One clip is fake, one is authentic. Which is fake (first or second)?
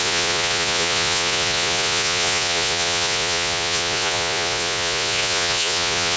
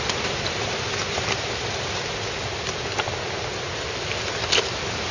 first